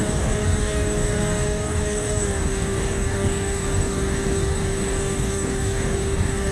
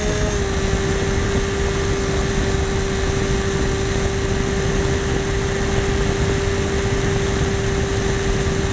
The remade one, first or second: first